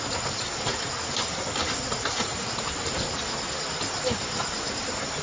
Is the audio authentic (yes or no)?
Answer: yes